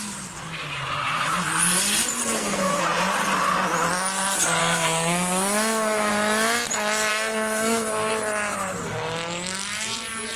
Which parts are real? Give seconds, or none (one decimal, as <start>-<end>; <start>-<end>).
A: 0.0-2.2; 2.8-4.6; 6.1-7.1; 8.1-10.4